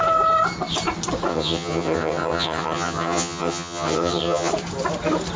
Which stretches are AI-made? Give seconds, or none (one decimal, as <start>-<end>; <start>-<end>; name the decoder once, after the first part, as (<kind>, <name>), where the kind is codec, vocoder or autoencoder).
1.3-4.5 (vocoder, HiFi-GAN)